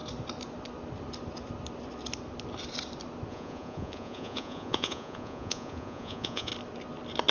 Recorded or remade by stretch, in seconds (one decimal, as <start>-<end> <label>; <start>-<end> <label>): 0.0-3.3 recorded; 3.3-6.5 remade; 6.5-7.3 recorded